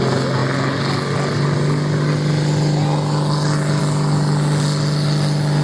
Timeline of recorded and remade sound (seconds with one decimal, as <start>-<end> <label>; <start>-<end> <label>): 0.0-5.6 recorded